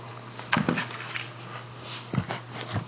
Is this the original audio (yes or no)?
yes